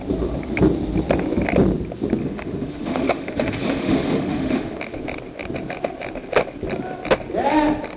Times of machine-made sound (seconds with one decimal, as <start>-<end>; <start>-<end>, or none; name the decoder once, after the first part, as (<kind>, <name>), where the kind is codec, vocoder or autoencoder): 2.2-4.8 (autoencoder, DAC-VAE)